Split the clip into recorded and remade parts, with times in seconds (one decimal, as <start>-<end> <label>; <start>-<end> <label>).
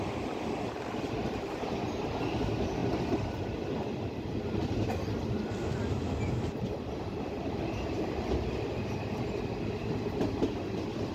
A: 0.0-11.1 recorded